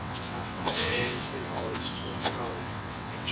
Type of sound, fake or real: fake